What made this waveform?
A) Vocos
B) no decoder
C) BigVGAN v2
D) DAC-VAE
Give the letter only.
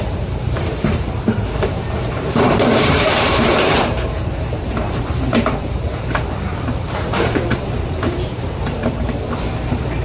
C